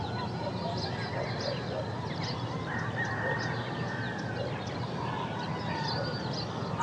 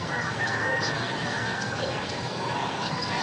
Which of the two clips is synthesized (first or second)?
second